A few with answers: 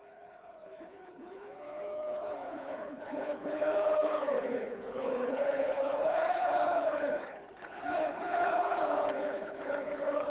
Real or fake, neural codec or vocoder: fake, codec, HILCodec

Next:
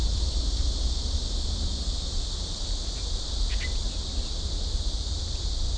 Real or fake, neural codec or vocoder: real